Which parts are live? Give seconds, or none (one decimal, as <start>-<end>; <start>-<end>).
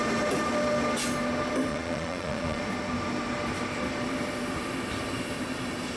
0.0-1.7; 2.6-6.0